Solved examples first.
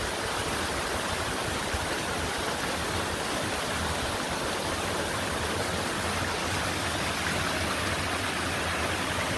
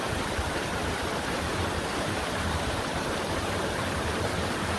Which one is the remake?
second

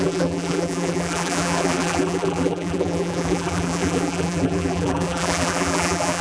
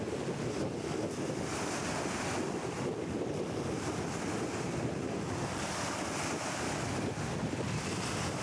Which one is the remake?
first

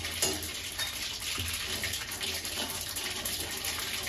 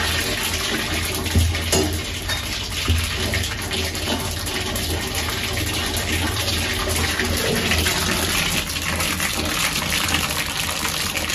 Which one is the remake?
first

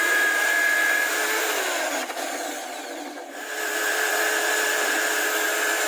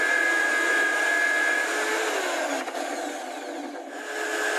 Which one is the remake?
first